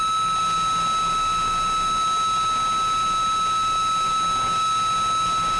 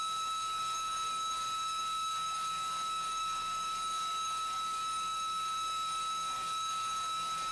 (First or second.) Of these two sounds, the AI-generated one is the second